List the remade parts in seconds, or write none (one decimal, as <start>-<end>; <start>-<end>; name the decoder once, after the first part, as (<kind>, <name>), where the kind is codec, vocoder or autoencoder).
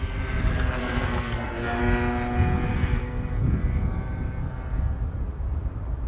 0.8-1.8 (codec, SNAC); 2.7-3.3